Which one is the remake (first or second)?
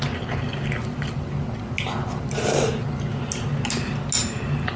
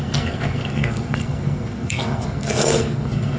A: second